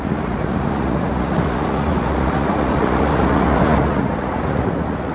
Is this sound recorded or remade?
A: remade